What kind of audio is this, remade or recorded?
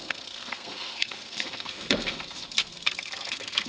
remade